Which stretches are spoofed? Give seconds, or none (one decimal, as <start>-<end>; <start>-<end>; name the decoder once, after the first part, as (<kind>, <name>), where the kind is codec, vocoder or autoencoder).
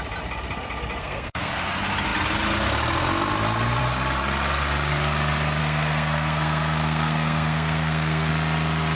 1.0-1.5 (codec, SNAC); 5.6-8.3